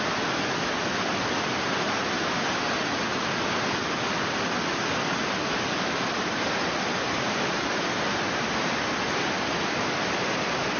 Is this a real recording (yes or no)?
yes